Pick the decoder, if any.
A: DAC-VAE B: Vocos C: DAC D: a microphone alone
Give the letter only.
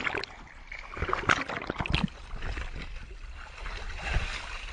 D